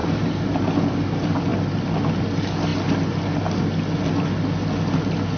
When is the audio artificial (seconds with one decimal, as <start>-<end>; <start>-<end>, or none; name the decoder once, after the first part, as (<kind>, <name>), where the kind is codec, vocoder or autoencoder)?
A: 0.0-0.5 (vocoder, BigVGAN v2)